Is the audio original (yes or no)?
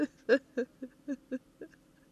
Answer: yes